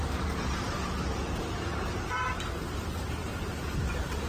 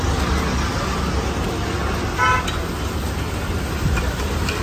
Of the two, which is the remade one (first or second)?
first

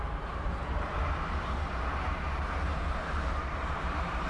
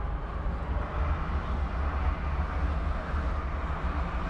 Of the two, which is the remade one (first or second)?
first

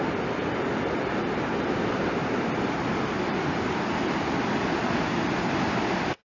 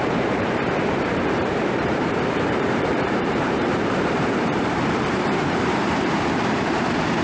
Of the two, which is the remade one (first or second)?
second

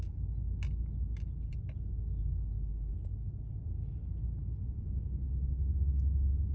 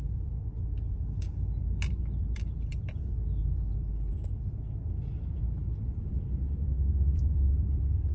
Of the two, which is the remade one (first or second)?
second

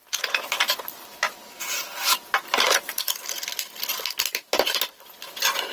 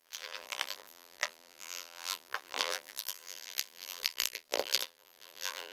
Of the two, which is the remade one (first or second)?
second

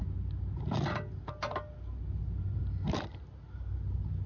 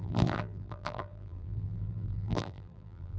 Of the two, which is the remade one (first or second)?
second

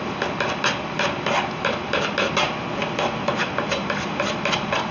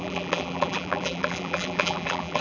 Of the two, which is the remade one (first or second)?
second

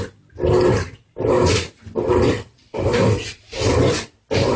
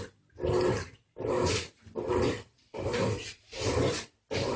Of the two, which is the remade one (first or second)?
second